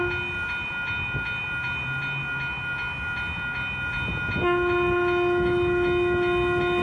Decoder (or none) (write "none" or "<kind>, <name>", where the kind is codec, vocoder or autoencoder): none